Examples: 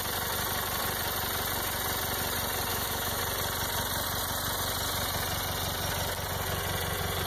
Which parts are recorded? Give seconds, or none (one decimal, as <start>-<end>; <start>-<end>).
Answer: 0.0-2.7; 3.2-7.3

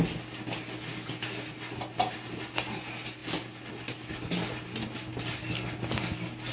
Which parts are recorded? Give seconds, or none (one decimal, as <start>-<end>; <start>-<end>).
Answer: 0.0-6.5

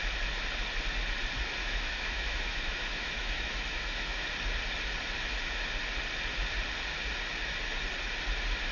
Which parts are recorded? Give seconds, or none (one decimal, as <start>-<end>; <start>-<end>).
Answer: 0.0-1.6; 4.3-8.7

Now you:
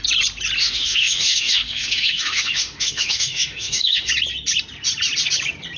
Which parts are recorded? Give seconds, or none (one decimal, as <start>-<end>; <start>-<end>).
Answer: 0.0-0.6; 4.1-5.8

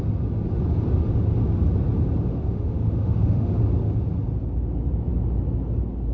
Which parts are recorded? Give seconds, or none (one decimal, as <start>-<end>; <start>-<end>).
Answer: 0.0-2.3; 3.6-6.1